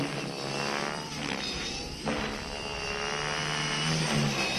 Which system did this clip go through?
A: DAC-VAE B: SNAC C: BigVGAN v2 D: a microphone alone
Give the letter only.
D